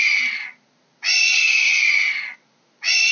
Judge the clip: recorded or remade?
recorded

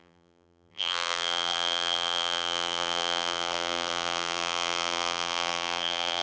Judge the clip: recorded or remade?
remade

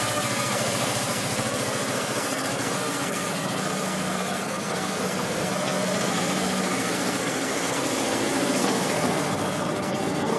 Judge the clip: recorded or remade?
remade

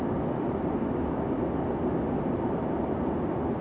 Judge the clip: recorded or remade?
recorded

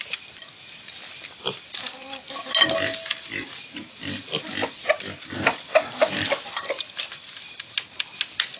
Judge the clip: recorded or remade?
recorded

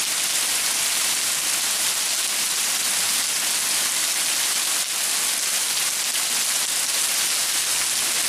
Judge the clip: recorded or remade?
recorded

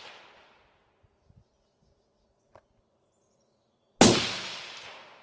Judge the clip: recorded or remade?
recorded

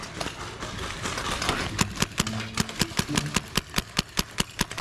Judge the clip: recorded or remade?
recorded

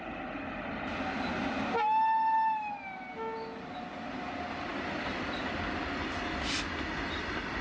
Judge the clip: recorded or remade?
recorded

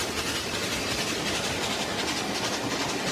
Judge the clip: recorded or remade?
recorded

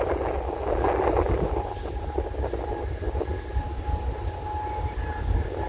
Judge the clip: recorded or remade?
recorded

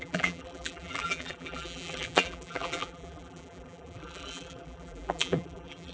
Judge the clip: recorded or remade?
remade